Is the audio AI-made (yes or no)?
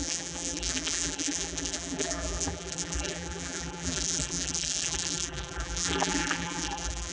yes